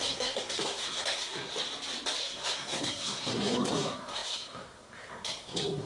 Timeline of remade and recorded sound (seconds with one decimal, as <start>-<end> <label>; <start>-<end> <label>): 0.0-1.5 remade; 1.5-2.2 recorded; 2.2-5.9 remade